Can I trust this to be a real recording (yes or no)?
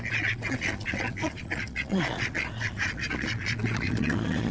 no